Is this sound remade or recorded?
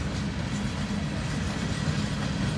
recorded